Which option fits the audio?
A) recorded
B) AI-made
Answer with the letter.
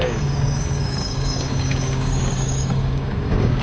B